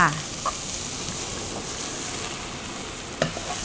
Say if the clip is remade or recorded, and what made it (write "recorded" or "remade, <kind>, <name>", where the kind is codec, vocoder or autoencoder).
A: recorded